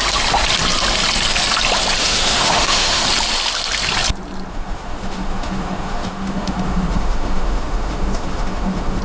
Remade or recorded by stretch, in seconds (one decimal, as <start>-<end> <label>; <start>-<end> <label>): 0.0-2.0 recorded; 2.0-3.0 remade; 3.0-4.5 recorded; 4.5-9.0 remade